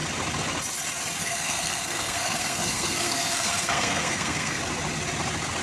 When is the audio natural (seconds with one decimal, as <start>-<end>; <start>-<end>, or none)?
0.0-1.2; 4.6-5.6

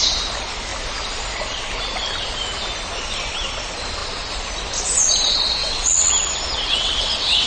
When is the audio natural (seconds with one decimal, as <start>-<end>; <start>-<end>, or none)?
0.0-5.6; 6.1-6.7

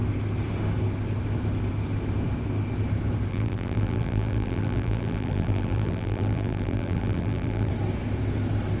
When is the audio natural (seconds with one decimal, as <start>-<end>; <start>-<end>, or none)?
0.0-3.3; 7.7-8.8

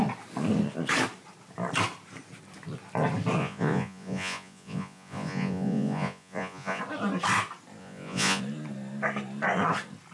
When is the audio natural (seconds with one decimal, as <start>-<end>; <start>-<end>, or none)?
0.0-3.4; 6.8-7.8; 8.4-10.1

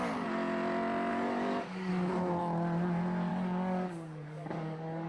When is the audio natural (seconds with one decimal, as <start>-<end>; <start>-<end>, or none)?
0.0-1.1; 1.9-3.3